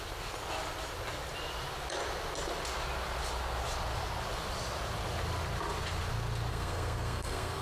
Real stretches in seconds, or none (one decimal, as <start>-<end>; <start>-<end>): 0.0-6.5

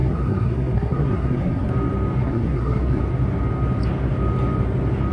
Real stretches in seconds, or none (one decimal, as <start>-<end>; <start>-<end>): 1.7-2.2; 3.0-5.1